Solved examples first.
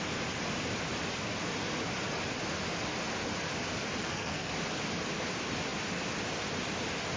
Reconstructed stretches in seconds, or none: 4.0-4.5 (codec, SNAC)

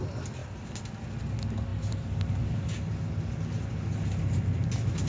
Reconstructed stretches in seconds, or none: none

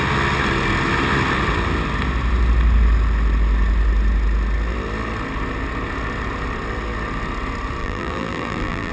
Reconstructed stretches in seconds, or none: 7.8-8.9 (vocoder, BigVGAN v2)